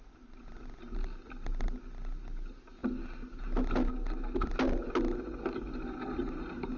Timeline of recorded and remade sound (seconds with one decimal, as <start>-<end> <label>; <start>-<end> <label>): 0.0-6.8 recorded